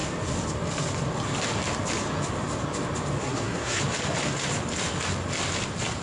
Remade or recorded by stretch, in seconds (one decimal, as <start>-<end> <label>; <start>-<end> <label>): 0.0-3.2 recorded; 3.2-3.8 remade; 3.8-6.0 recorded